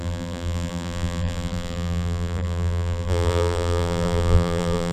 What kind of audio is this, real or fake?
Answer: fake